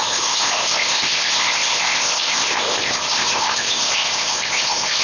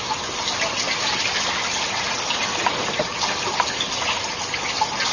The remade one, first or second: first